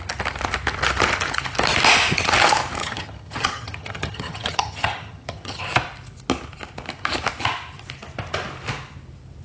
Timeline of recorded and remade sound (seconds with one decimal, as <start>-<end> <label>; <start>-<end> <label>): 0.0-2.8 recorded; 2.8-5.6 remade; 5.6-9.4 recorded